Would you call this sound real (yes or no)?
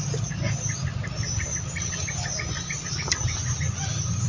yes